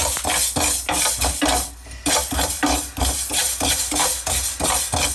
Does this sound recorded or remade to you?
recorded